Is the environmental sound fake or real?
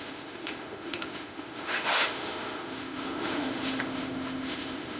fake